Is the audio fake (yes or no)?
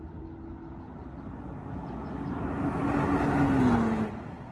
no